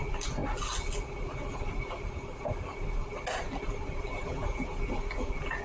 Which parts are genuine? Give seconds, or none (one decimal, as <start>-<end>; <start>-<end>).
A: 0.0-5.6